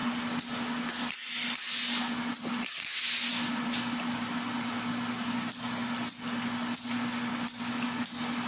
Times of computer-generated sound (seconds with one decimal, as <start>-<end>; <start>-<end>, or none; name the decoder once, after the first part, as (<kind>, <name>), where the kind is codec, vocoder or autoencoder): none